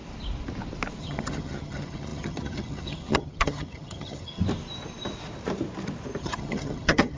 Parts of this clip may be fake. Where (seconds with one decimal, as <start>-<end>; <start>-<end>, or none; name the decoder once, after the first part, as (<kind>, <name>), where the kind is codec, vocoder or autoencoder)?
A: 1.0-4.4 (vocoder, HiFi-GAN); 6.2-7.2